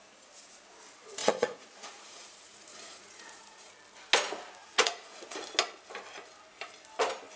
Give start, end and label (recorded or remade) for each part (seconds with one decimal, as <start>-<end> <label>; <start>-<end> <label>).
0.0-1.2 recorded; 1.2-3.7 remade; 3.7-4.6 recorded; 4.6-5.3 remade; 5.3-7.4 recorded